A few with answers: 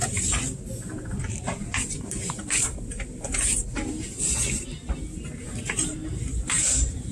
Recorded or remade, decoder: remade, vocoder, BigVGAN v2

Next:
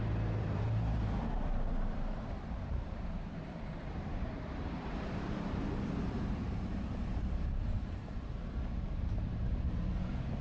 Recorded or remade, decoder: remade, vocoder, BigVGAN v2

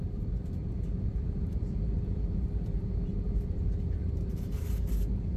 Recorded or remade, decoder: remade, vocoder, BigVGAN v2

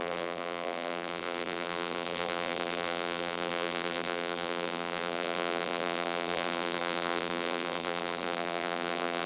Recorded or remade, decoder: remade, vocoder, BigVGAN v2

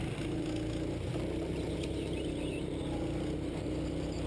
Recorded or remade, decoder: remade, vocoder, BigVGAN v2